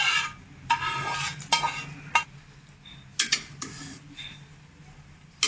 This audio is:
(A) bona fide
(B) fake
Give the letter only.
A